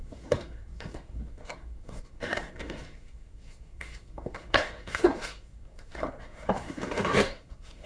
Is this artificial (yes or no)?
yes